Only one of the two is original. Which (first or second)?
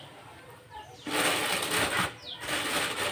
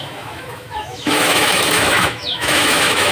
first